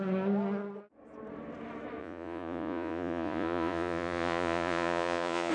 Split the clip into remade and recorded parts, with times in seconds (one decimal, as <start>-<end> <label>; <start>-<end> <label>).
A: 0.0-2.0 recorded; 2.0-5.5 remade